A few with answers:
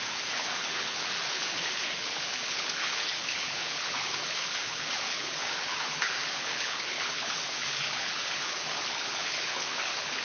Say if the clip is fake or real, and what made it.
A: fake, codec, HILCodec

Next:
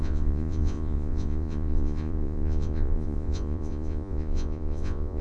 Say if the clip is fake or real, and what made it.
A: fake, vocoder, Vocos